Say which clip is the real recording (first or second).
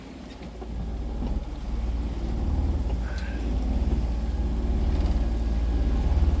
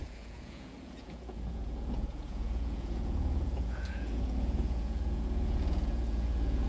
first